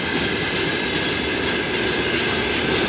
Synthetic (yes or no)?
no